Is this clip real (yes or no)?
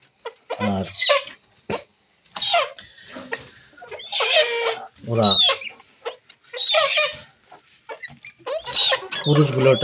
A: yes